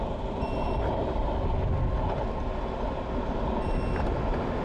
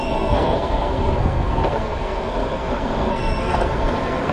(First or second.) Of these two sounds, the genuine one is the first